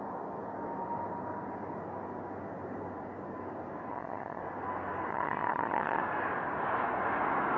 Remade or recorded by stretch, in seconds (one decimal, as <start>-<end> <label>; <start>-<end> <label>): 0.0-3.9 recorded; 3.9-4.4 remade; 4.4-5.1 recorded; 5.1-6.0 remade; 6.0-7.6 recorded